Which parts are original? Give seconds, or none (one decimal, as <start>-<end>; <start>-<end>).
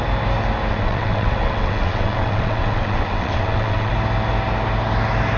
0.0-0.7; 3.9-5.4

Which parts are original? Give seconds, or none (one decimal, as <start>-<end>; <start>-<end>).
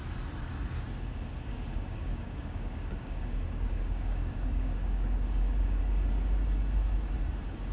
0.0-1.5; 5.8-7.7